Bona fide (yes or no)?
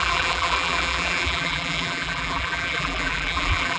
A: no